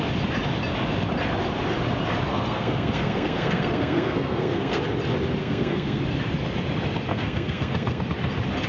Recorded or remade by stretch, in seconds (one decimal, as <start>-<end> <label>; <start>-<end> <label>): 0.0-2.3 recorded; 2.3-4.8 remade; 4.8-5.4 recorded; 5.4-6.0 remade; 6.0-7.1 recorded; 7.1-8.0 remade; 8.0-8.7 recorded